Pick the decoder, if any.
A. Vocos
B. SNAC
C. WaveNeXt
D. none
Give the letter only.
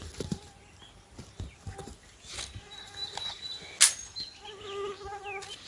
D